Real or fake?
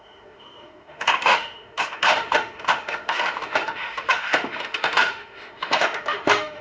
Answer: fake